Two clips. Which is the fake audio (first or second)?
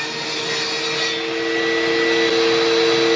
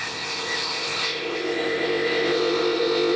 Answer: second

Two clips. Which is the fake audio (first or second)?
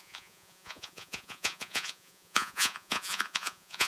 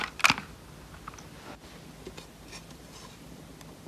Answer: first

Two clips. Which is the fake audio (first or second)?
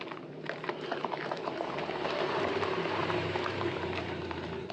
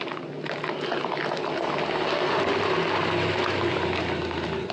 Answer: first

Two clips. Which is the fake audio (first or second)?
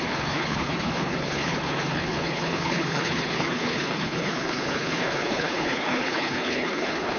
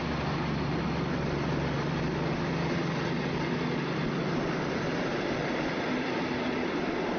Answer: first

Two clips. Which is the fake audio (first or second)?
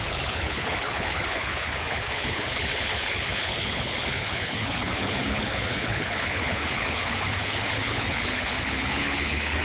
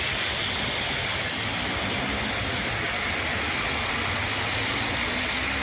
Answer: first